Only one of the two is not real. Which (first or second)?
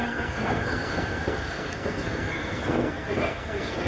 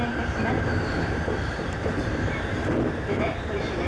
first